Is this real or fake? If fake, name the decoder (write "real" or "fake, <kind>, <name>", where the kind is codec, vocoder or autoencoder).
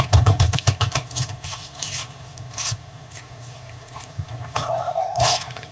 fake, codec, SNAC